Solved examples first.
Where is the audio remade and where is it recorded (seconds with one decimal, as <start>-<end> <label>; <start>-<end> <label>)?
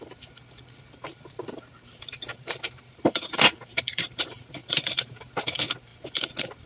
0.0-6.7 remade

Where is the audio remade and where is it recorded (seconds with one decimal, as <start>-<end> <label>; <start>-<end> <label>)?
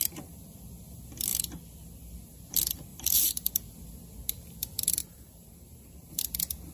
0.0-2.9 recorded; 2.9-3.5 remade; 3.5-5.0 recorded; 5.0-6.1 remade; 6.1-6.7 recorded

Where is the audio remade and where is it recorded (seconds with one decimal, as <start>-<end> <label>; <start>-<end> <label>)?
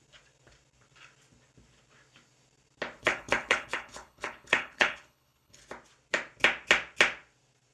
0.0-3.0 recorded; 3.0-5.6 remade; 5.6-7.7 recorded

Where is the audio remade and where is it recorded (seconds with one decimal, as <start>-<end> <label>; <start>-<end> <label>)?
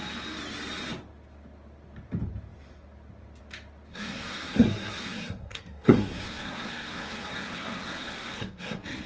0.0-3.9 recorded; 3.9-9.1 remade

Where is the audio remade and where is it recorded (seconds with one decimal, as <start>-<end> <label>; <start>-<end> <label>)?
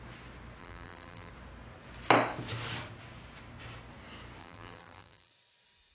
0.0-0.6 recorded; 0.6-1.3 remade; 1.3-4.4 recorded; 4.4-5.3 remade; 5.3-5.9 recorded